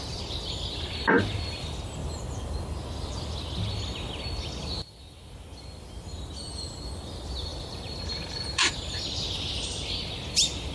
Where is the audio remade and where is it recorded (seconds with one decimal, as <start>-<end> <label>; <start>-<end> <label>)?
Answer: 0.0-2.0 recorded; 2.0-2.6 remade; 2.6-7.5 recorded; 7.5-9.0 remade; 9.0-10.7 recorded